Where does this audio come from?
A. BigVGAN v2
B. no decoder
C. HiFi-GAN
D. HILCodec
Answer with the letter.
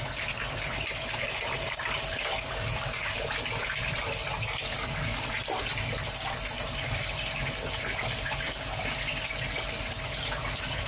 B